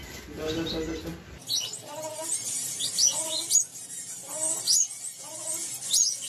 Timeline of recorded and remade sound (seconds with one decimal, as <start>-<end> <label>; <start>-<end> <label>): 0.0-6.3 recorded